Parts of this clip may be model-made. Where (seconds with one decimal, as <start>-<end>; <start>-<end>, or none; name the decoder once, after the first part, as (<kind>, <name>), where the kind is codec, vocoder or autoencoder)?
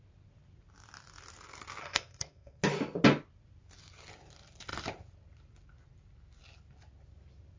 1.8-2.6 (codec, SNAC)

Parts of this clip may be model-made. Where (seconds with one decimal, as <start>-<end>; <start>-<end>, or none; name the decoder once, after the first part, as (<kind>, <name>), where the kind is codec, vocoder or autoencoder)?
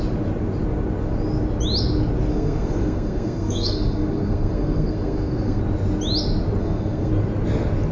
2.3-5.6 (codec, SNAC); 6.6-7.1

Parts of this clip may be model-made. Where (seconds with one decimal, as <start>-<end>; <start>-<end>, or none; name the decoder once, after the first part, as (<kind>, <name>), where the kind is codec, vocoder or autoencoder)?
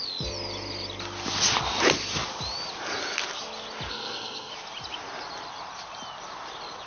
3.9-4.5 (codec, SNAC)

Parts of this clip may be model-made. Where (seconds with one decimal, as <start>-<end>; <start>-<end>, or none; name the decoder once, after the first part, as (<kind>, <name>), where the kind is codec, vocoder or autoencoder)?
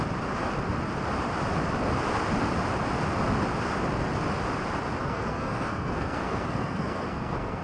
5.0-7.6 (codec, SNAC)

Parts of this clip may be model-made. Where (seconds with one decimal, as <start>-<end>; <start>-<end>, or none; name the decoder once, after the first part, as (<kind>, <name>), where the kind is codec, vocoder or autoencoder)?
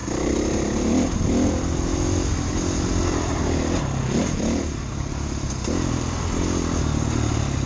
none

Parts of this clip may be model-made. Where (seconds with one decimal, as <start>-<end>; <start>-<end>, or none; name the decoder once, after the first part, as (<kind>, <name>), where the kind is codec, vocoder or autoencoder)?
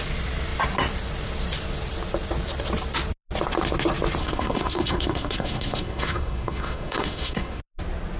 4.2-7.6 (codec, SNAC)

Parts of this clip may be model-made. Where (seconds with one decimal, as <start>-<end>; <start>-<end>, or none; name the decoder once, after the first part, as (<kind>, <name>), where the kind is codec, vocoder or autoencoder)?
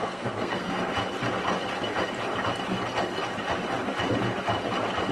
0.0-0.9 (codec, SNAC)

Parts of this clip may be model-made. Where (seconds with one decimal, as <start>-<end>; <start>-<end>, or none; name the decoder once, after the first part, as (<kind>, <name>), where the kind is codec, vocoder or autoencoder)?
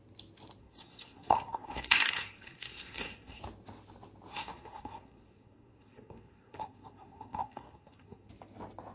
0.6-3.4 (codec, SNAC); 4.3-8.3